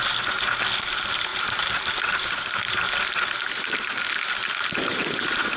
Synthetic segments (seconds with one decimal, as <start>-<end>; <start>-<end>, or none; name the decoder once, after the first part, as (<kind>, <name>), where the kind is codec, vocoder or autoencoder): none